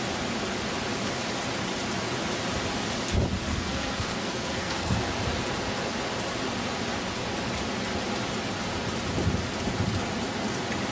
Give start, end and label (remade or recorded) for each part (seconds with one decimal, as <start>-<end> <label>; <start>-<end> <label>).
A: 0.0-3.5 recorded; 3.5-5.0 remade; 5.0-10.9 recorded